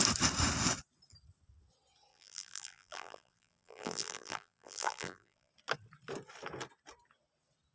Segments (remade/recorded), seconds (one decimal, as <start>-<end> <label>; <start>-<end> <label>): 0.0-2.1 recorded; 2.1-5.5 remade; 5.5-7.7 recorded